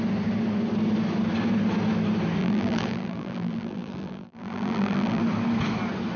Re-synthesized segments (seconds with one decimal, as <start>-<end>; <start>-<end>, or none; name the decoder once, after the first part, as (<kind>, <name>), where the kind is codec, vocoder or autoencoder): 2.4-5.2 (vocoder, BigVGAN v2)